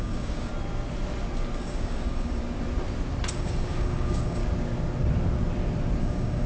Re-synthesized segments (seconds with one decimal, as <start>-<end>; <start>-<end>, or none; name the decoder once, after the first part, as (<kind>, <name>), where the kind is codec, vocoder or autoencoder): 0.0-0.5 (codec, DAC); 1.6-2.4; 3.3-4.4; 6.0-6.5